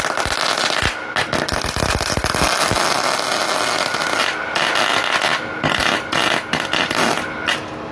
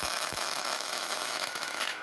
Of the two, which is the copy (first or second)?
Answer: second